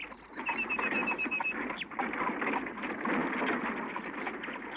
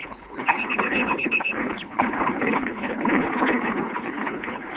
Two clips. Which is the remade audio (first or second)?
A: second